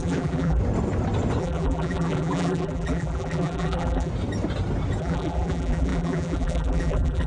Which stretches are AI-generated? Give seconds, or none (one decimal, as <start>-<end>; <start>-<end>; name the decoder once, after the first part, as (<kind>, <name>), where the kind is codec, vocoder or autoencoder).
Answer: 0.0-0.6 (vocoder, BigVGAN v2); 1.4-4.1; 5.0-7.3